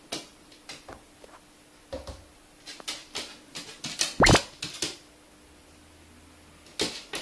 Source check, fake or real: real